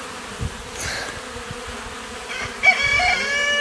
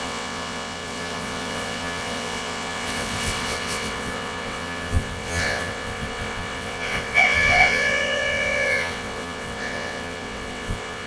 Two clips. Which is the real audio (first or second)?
first